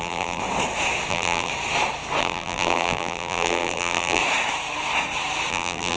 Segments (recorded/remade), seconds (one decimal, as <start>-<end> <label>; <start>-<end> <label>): 0.0-0.4 remade; 0.4-1.1 recorded; 1.1-1.5 remade; 1.5-2.2 recorded; 2.2-4.2 remade; 4.2-5.5 recorded; 5.5-6.0 remade